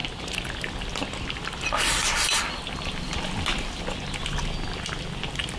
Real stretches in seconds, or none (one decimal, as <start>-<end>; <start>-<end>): 0.0-5.6